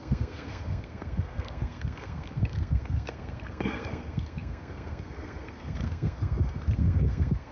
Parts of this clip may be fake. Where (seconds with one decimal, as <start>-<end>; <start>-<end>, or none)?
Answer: 0.0-7.5